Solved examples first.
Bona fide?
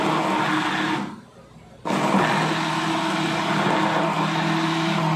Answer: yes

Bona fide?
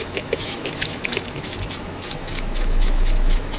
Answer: no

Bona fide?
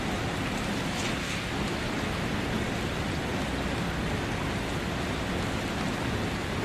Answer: yes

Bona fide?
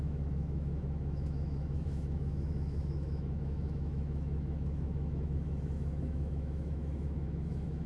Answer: no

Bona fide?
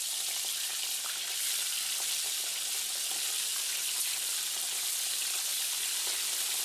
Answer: yes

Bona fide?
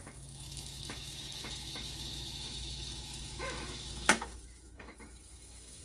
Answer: no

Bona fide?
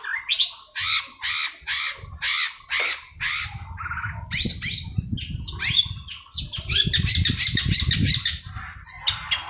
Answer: yes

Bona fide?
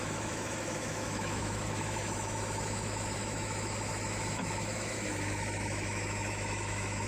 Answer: no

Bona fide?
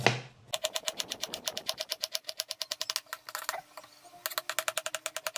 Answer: yes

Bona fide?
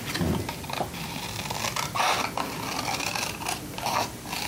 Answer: yes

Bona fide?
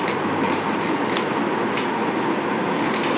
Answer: yes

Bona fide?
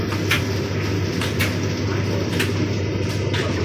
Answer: yes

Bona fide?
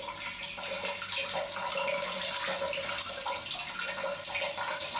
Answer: yes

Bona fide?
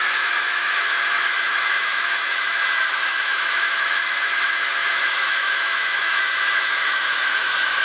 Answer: no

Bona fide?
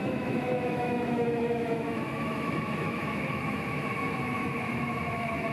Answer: no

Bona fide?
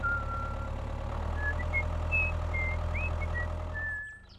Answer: yes